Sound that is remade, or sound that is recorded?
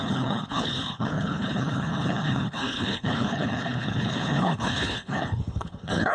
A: remade